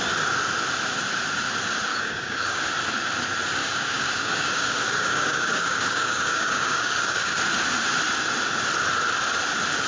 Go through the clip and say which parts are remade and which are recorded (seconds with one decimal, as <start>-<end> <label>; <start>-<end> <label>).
0.0-1.9 recorded; 1.9-2.6 remade; 2.6-3.6 recorded; 3.6-7.4 remade; 7.4-9.9 recorded